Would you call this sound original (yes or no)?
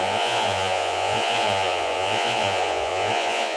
no